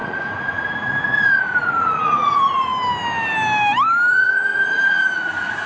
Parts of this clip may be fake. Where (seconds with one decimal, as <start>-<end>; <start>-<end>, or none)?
0.0-2.7; 4.1-5.7